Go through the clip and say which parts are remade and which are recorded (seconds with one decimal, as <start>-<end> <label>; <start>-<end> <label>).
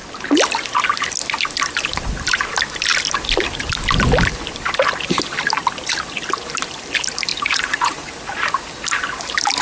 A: 0.0-7.3 recorded; 7.3-8.1 remade; 8.1-9.6 recorded